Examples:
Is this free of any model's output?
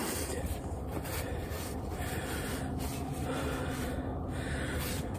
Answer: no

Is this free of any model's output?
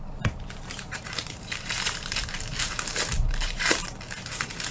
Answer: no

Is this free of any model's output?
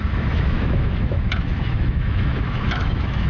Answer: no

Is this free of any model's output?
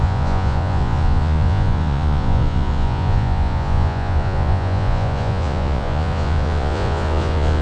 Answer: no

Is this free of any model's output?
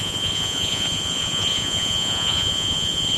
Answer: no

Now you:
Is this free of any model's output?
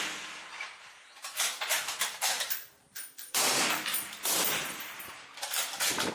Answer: no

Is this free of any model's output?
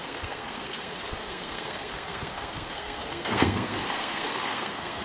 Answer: no